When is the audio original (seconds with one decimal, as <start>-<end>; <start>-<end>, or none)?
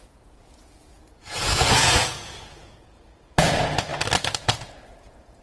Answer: 3.9-4.4